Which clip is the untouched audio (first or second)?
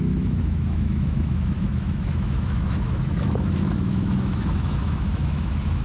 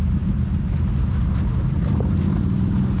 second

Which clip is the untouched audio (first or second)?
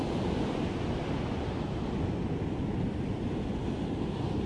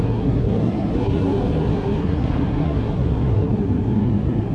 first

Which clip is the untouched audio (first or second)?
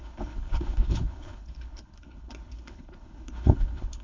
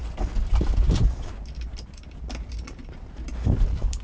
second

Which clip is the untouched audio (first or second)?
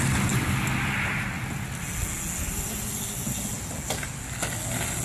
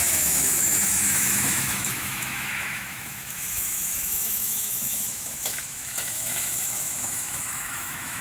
first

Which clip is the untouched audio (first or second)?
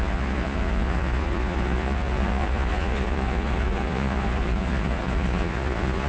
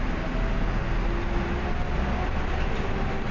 second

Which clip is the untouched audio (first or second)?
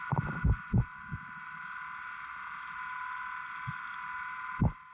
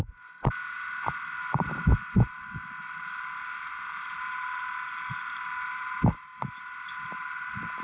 first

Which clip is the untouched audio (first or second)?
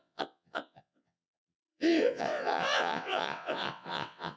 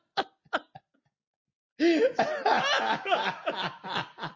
second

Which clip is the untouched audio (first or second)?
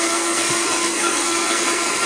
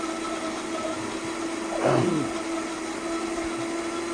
second